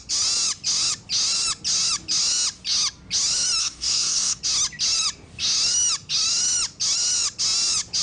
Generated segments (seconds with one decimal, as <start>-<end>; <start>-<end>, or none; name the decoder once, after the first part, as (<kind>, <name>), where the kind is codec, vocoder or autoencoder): 3.6-4.4 (codec, SNAC)

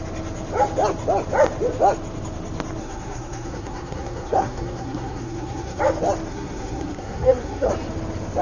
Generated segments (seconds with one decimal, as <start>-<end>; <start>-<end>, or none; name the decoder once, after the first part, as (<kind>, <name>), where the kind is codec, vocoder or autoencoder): 2.8-5.8 (codec, SNAC); 6.3-7.7

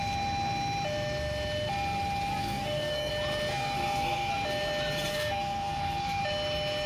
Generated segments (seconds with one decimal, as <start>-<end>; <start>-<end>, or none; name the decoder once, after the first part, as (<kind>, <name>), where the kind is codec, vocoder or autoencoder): 2.4-3.1 (codec, SNAC); 3.5-4.3; 5.1-6.2

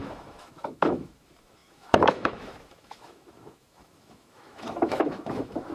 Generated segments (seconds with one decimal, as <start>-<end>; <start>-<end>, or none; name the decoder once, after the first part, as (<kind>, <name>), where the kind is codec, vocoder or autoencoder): 0.0-5.7 (autoencoder, DAC-VAE)

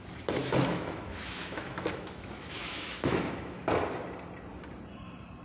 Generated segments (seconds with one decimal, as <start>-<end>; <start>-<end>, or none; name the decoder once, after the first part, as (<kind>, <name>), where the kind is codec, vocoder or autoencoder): 0.4-3.6 (autoencoder, DAC-VAE)

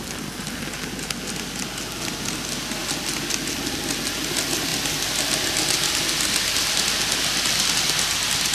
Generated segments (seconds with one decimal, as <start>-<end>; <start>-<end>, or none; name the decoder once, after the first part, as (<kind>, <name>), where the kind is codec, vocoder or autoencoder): none